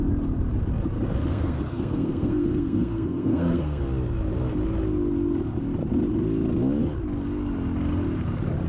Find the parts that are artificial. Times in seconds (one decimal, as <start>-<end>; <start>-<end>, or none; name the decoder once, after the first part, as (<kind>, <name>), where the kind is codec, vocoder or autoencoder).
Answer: 1.3-3.8 (codec, SNAC)